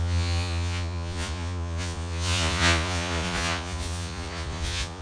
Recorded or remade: remade